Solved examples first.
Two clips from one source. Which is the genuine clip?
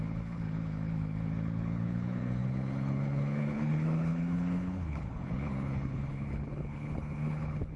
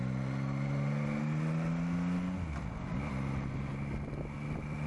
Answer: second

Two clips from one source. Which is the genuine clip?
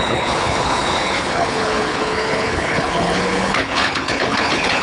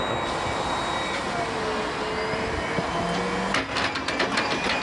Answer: second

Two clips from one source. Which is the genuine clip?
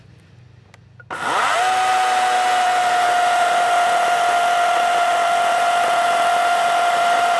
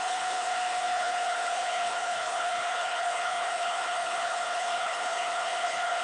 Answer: first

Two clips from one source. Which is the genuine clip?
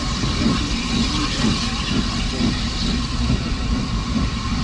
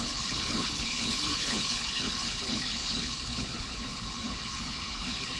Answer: first